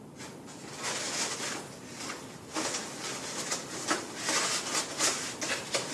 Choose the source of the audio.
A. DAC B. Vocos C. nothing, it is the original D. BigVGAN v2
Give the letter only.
C